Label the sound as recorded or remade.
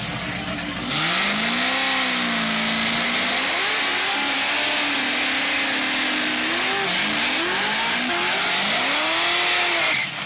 recorded